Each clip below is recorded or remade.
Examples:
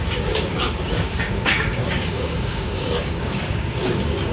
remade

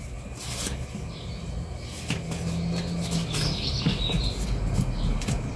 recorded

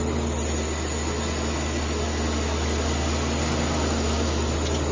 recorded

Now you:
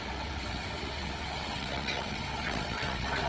remade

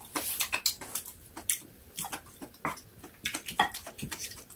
recorded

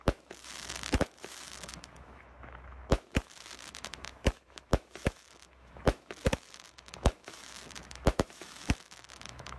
remade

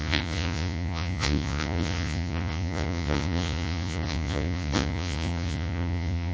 remade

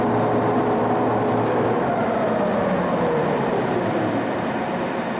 recorded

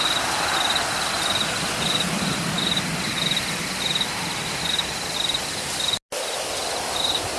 recorded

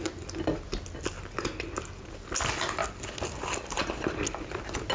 recorded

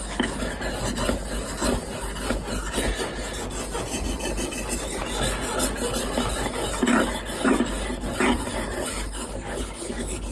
recorded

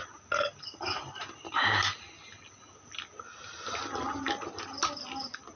recorded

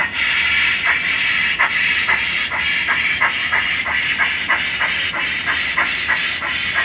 remade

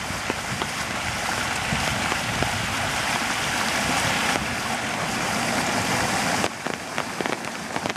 recorded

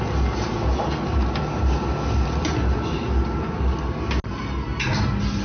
recorded